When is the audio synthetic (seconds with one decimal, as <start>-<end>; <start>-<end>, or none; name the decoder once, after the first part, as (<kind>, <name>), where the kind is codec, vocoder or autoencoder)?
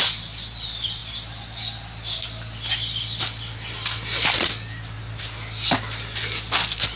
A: none